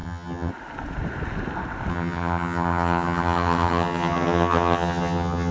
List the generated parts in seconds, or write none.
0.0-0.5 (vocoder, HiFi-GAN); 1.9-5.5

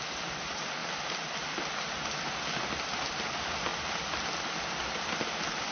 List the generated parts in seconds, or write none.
none